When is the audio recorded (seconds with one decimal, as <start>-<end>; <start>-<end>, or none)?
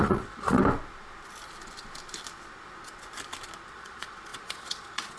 0.6-3.7